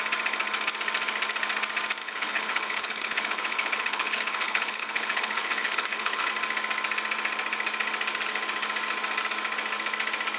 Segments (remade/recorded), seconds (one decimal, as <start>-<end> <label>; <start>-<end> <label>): 0.0-2.0 recorded; 2.0-6.3 remade; 6.3-10.4 recorded